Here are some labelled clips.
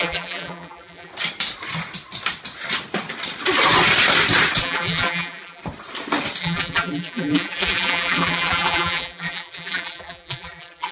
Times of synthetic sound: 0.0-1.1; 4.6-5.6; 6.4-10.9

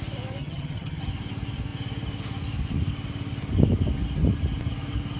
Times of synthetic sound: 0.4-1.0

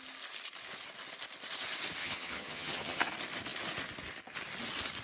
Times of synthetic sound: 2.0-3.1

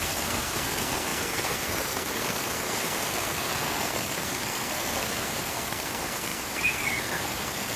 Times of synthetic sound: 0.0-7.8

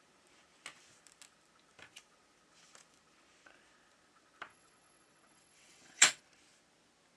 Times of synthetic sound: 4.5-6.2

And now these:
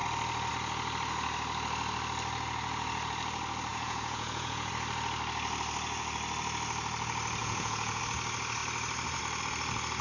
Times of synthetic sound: 3.7-4.7; 7.4-8.0

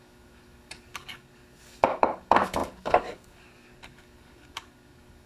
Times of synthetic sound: 0.0-5.3